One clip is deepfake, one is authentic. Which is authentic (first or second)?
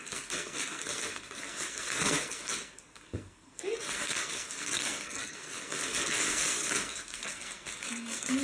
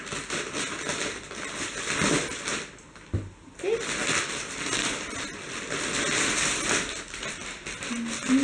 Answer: second